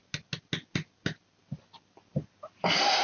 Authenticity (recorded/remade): recorded